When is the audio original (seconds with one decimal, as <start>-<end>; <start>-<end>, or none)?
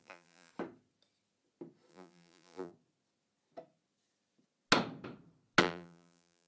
0.5-1.9; 2.7-5.6